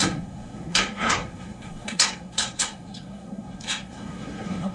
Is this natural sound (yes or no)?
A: no